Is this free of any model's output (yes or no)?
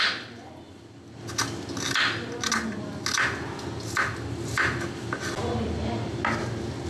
yes